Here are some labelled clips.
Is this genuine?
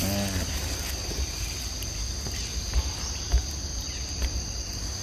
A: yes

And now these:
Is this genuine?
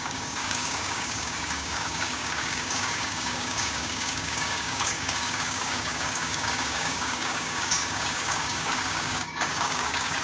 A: no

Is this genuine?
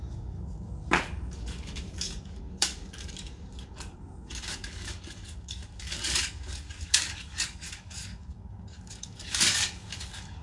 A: no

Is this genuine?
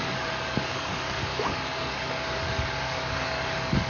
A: no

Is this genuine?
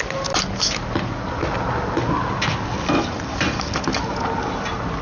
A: yes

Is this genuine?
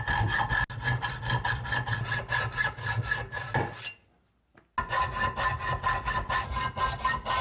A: yes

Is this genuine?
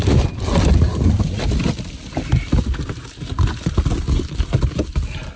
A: yes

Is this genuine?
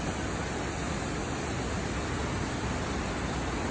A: yes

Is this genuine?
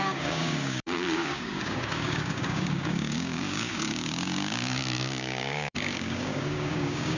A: no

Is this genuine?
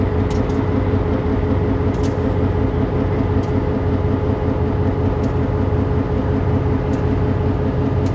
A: yes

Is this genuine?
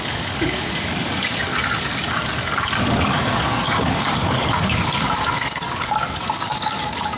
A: no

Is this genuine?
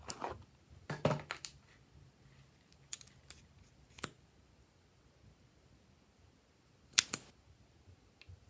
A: yes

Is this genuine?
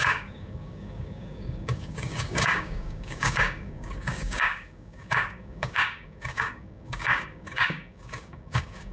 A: no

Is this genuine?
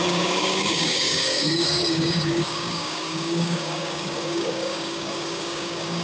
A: no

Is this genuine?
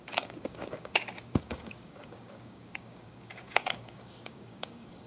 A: no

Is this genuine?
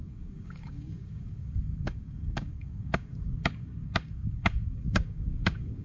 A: no